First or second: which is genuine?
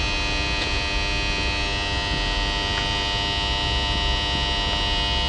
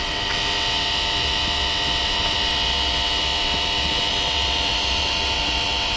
first